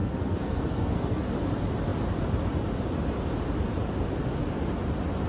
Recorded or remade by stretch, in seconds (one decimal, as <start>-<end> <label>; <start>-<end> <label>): 0.0-1.3 remade; 1.3-5.3 recorded